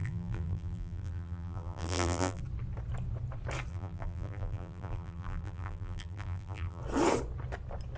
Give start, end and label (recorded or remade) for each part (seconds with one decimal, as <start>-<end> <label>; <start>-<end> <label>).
0.0-2.4 remade; 2.4-3.7 recorded; 3.7-6.8 remade; 6.8-8.0 recorded